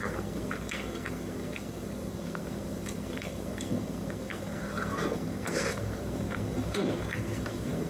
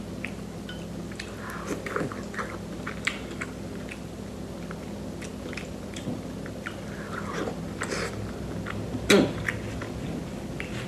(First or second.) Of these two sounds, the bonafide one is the second